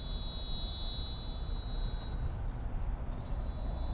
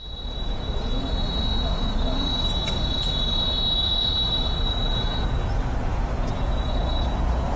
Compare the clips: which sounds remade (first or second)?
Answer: second